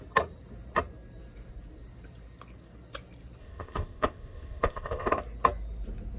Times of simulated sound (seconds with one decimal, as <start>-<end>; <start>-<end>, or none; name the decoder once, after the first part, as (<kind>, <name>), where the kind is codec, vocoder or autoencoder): 3.4-5.2 (codec, ZipCodec)